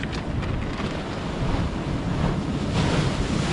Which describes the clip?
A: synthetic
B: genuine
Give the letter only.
B